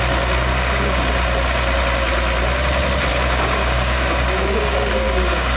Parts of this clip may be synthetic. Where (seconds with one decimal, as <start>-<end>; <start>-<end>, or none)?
0.5-1.0; 3.1-5.6